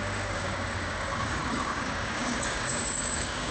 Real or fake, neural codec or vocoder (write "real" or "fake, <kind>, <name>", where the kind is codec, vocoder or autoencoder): fake, codec, DAC